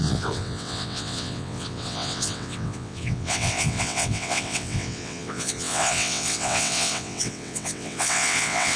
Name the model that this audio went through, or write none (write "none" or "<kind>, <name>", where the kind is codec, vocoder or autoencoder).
vocoder, WaveNeXt